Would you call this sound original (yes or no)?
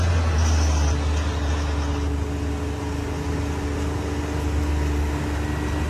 yes